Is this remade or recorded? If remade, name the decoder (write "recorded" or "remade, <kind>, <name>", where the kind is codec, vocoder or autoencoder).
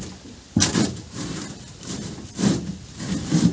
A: recorded